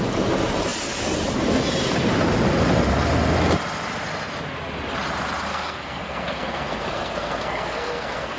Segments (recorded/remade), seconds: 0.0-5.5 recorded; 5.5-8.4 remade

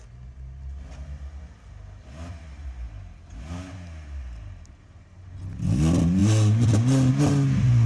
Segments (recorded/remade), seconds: 0.0-7.9 recorded